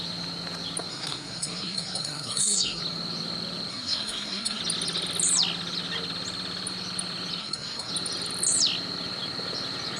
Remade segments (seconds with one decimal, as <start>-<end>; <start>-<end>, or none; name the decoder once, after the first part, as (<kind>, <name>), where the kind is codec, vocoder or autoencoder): 0.9-2.8 (codec, SNAC); 3.7-4.6; 7.4-7.9